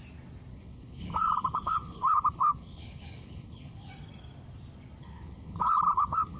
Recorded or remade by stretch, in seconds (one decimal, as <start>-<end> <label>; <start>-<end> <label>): 0.0-0.5 recorded; 0.5-3.9 remade; 3.9-5.0 recorded; 5.0-6.4 remade